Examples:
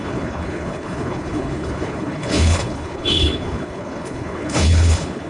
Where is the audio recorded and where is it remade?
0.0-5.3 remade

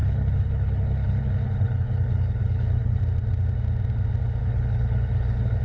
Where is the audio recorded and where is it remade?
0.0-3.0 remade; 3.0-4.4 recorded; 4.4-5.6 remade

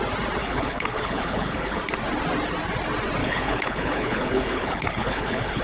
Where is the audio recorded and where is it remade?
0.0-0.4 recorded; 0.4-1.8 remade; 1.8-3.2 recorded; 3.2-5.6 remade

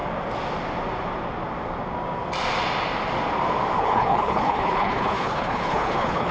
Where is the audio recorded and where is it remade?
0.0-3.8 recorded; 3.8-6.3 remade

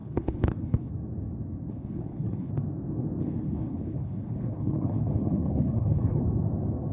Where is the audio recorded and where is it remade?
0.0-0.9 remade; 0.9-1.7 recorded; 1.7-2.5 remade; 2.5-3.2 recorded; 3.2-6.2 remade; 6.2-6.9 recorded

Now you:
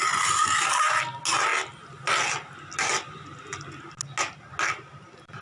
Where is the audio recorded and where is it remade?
0.0-5.4 recorded

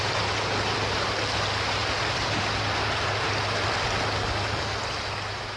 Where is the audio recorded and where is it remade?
0.0-5.6 recorded